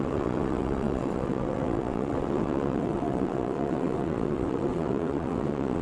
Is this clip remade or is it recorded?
remade